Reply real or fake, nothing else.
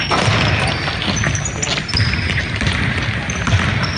real